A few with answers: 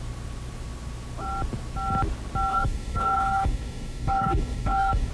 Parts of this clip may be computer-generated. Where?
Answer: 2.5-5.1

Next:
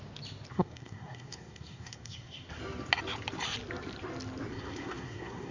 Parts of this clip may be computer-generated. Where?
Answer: 0.5-2.6; 4.5-5.5

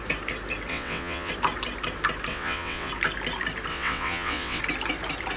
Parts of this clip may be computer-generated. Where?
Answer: 0.7-1.3; 2.3-2.9; 3.7-4.6

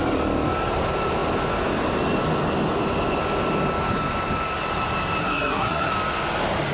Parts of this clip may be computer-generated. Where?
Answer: 5.2-5.9

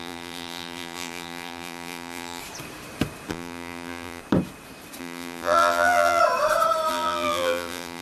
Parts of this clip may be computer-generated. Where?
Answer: 0.0-2.4; 3.3-4.2; 5.0-6.2; 6.9-8.0

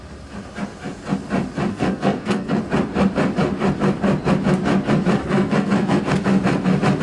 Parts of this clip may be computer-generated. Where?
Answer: 1.7-2.6; 5.2-6.0